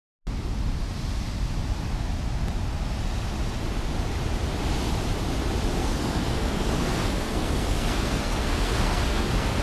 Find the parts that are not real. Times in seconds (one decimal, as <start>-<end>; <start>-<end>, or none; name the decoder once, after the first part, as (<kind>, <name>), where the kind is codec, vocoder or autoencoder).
5.8-9.6 (codec, SNAC)